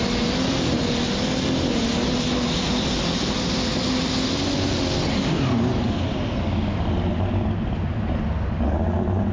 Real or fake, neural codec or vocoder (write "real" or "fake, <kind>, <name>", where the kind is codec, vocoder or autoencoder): real